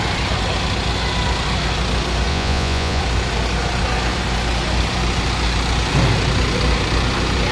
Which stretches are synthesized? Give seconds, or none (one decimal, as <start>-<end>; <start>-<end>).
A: 2.3-3.0